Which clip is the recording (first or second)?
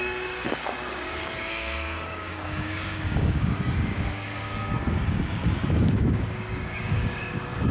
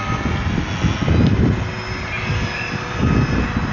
second